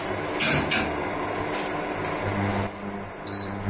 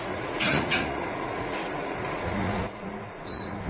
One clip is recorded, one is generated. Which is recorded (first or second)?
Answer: first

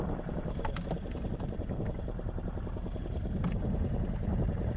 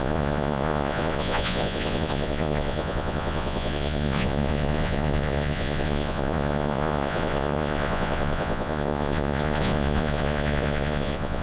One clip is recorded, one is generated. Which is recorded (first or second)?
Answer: first